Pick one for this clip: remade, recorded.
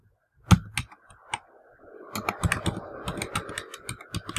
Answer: recorded